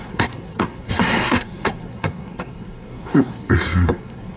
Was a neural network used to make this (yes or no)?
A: yes